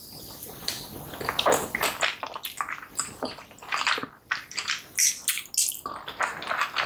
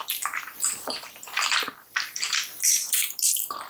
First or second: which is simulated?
second